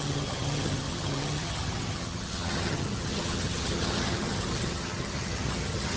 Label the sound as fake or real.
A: fake